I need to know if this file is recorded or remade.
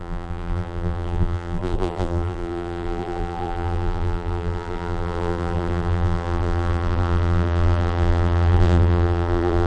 remade